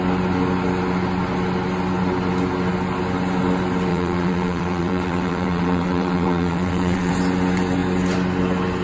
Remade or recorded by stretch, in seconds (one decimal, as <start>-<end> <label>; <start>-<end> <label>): 0.0-3.9 recorded; 3.9-7.1 remade; 7.1-8.8 recorded